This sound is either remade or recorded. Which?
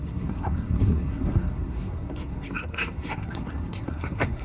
remade